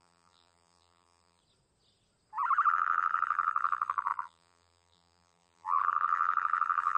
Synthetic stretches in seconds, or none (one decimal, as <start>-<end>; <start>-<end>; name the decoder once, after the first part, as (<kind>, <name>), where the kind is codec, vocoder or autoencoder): 0.0-1.4 (vocoder, BigVGAN v2); 2.7-7.0